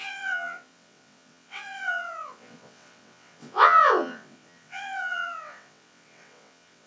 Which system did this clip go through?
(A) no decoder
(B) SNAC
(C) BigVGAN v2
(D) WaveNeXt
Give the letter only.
D